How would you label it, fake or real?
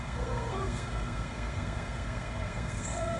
fake